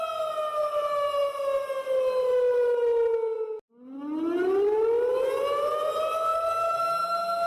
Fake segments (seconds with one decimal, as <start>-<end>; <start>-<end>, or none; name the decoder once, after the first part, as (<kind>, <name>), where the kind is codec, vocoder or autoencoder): none